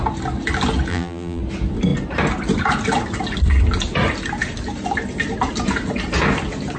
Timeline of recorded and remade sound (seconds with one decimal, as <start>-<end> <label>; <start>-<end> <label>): 0.0-0.9 recorded; 0.9-1.4 remade; 1.4-6.8 recorded